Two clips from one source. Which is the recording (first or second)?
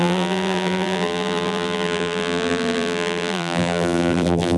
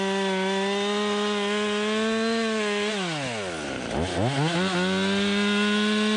second